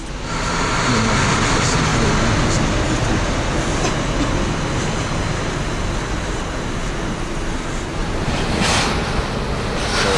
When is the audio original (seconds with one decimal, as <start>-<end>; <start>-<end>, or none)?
0.0-8.0; 8.8-10.2